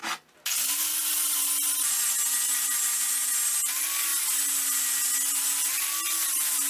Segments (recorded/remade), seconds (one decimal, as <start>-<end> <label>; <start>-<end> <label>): 0.0-6.7 recorded